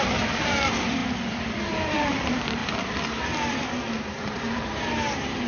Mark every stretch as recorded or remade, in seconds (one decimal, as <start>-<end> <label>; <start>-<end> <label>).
0.0-1.0 remade; 1.0-1.6 recorded; 1.6-2.6 remade; 2.6-4.2 recorded; 4.2-5.5 remade